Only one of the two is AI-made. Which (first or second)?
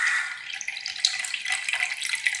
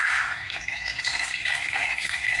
second